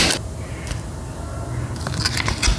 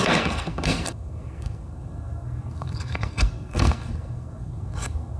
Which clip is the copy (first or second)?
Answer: second